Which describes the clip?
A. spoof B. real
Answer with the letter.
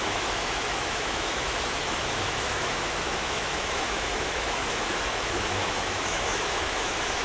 A